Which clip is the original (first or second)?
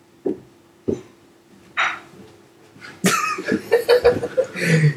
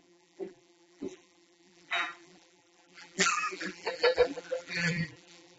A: first